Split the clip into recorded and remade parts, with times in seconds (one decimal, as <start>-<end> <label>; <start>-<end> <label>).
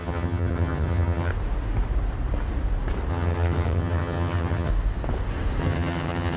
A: 0.0-1.3 remade; 1.3-3.1 recorded; 3.1-4.7 remade; 4.7-5.6 recorded; 5.6-6.4 remade